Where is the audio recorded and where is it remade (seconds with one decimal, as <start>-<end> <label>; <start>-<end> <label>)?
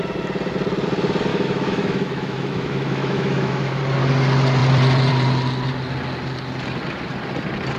0.0-1.3 recorded; 1.3-3.8 remade; 3.8-7.8 recorded